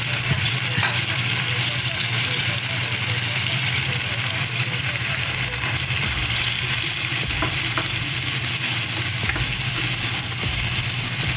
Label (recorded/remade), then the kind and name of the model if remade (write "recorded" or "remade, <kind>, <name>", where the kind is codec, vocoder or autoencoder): remade, vocoder, BigVGAN v2